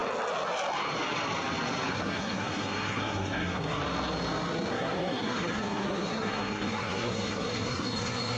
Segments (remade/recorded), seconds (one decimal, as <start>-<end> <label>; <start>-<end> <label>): 0.0-1.9 recorded; 1.9-3.8 remade; 3.8-4.7 recorded; 4.7-8.4 remade